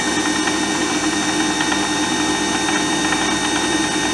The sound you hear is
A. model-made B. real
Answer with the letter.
B